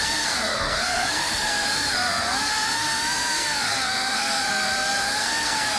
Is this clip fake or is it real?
fake